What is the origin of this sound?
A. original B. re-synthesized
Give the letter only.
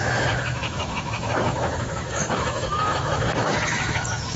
B